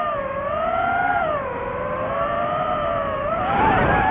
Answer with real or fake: fake